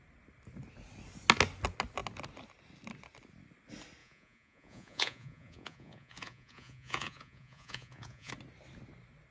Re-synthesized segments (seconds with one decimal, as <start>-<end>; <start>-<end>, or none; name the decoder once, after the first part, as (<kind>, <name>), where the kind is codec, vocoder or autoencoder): 4.0-8.3 (vocoder, Vocos)